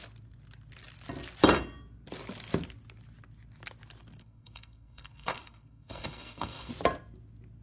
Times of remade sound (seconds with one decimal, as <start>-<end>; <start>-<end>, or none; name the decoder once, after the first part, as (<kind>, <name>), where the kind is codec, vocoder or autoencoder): 4.2-6.7 (codec, SNAC)